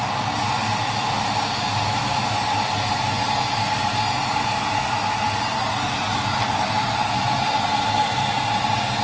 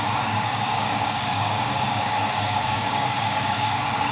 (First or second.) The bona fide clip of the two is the first